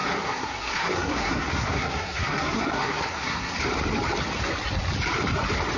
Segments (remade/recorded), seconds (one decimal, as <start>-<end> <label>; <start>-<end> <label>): 0.0-3.5 remade; 3.5-5.8 recorded